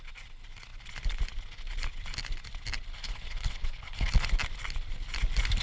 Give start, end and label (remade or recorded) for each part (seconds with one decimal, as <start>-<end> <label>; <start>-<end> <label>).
0.0-2.9 recorded; 2.9-4.1 remade; 4.1-5.6 recorded